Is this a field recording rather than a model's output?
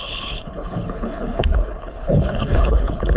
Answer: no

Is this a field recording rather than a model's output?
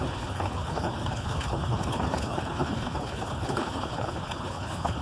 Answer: no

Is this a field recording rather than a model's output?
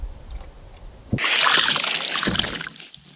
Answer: yes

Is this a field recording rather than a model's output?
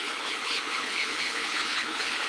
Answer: no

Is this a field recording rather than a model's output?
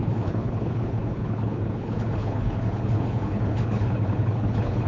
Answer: no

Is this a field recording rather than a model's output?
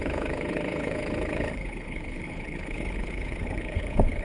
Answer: no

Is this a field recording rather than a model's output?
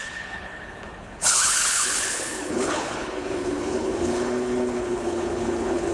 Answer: no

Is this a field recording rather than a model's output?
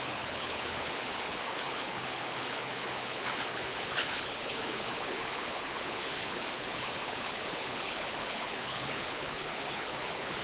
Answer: no